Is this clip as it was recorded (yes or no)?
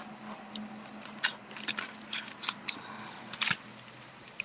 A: yes